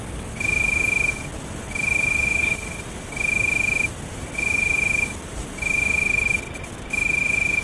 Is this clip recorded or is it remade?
recorded